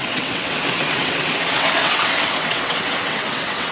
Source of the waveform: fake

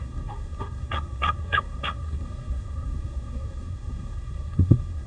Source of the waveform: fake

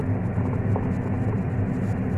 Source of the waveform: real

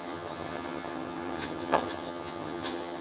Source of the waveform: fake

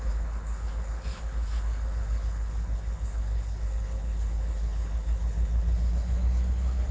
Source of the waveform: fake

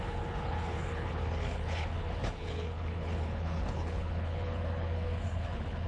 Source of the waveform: fake